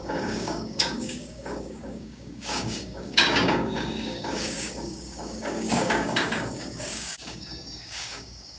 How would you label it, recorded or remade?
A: remade